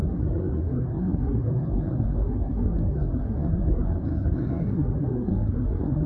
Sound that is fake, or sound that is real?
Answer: fake